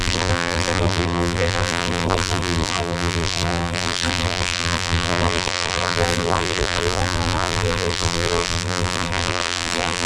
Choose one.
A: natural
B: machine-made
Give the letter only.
B